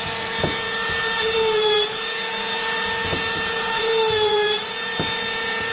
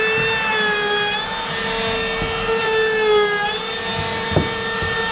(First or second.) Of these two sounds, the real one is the second